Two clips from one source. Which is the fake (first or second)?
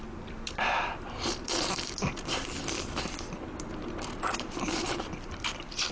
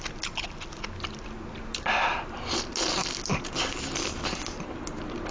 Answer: first